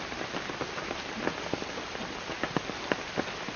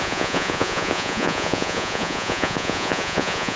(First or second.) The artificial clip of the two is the second